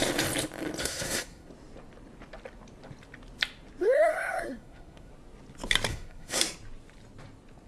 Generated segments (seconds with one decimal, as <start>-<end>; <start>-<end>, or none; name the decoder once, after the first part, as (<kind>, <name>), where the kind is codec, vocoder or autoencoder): 0.8-1.5 (codec, SNAC); 3.8-5.1; 5.9-6.4